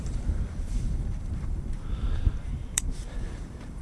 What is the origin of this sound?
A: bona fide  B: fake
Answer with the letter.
B